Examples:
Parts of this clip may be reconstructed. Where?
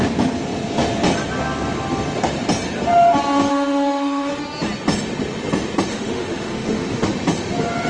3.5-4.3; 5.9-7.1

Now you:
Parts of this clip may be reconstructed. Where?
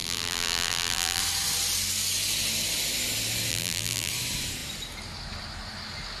0.0-1.2; 3.5-4.1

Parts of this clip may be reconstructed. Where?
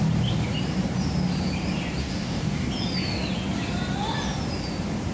2.0-2.7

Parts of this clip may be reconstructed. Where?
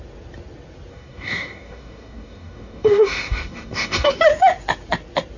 0.9-4.1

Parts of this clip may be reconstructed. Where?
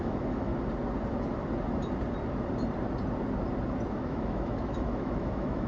0.0-0.5; 3.9-5.7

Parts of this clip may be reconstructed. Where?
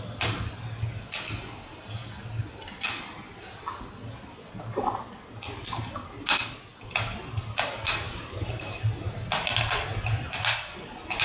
none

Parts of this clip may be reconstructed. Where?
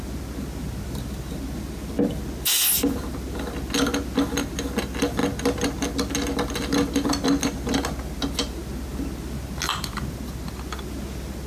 none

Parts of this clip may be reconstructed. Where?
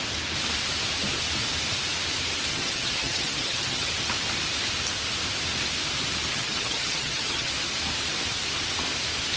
2.5-3.9; 6.3-7.5